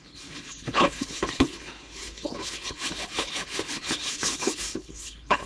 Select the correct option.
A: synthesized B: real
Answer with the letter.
A